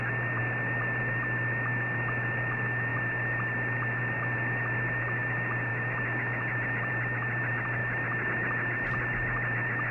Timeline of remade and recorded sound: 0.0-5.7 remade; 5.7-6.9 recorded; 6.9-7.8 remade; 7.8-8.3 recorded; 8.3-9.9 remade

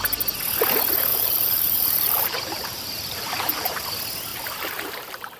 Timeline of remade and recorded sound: 0.0-1.1 recorded; 1.1-3.9 remade; 3.9-4.3 recorded; 4.3-5.4 remade

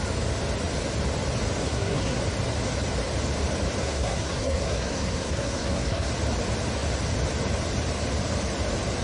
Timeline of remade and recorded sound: 0.0-1.6 recorded; 1.6-2.2 remade; 2.2-3.8 recorded; 3.8-6.1 remade; 6.1-9.0 recorded